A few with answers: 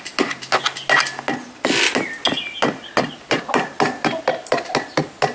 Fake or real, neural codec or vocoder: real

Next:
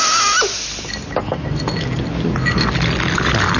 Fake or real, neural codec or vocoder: real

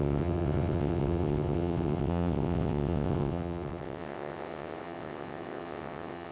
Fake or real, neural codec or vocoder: fake, vocoder, WaveNeXt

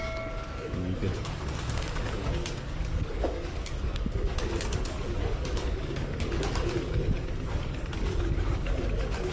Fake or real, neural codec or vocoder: fake, codec, DAC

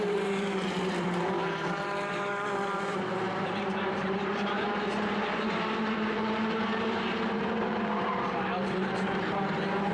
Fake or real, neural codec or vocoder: fake, vocoder, BigVGAN v2